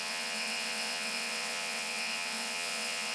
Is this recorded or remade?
remade